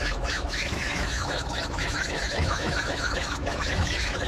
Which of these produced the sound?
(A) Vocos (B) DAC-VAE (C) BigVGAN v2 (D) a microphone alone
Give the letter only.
B